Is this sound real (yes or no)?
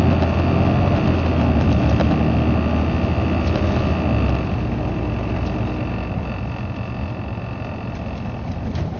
yes